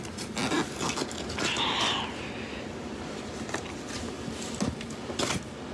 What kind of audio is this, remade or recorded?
recorded